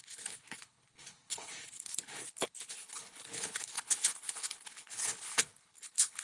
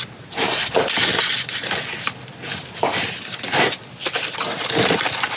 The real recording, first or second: second